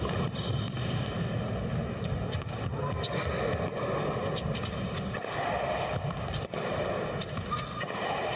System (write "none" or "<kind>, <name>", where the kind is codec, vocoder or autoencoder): none